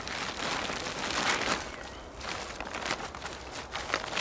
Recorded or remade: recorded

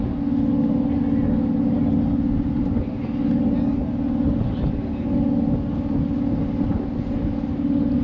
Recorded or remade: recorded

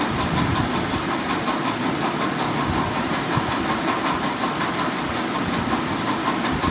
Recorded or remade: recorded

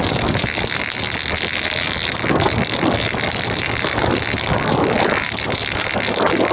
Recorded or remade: recorded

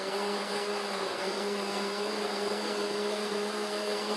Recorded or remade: remade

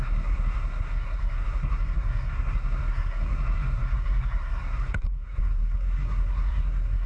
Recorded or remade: remade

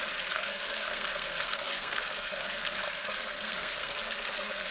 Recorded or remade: remade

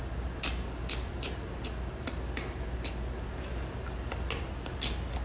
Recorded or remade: recorded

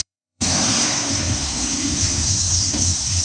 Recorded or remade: remade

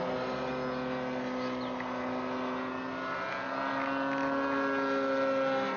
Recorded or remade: recorded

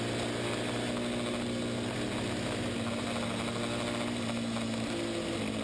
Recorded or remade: recorded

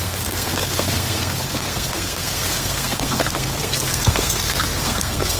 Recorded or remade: remade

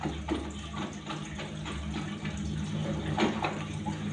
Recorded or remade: recorded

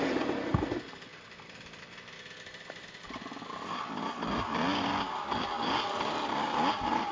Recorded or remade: recorded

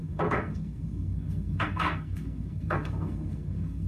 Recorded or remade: remade